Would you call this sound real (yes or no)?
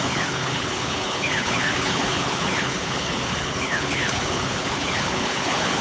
no